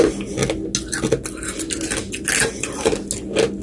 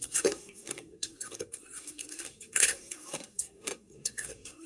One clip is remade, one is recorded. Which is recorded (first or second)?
first